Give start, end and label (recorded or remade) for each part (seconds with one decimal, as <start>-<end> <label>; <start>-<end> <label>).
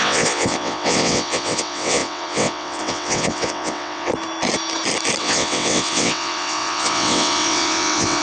0.0-4.1 remade; 4.1-5.2 recorded; 5.2-8.2 remade